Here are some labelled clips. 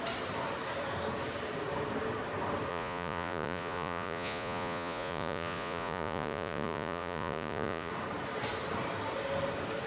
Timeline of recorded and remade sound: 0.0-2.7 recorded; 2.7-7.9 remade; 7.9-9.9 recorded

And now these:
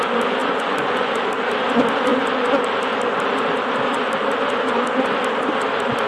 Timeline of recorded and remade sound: 0.0-0.4 recorded; 0.4-1.2 remade; 1.2-6.1 recorded

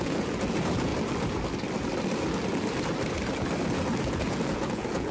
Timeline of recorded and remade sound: 0.0-0.9 remade; 0.9-4.0 recorded; 4.0-5.1 remade

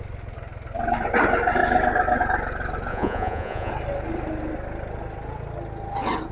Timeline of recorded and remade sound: 0.0-2.9 recorded; 2.9-3.7 remade; 3.7-6.3 recorded